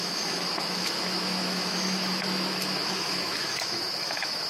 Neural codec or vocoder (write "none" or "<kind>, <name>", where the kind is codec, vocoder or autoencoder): autoencoder, DAC-VAE